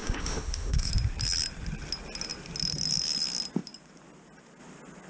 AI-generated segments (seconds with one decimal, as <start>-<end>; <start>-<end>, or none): 0.0-0.9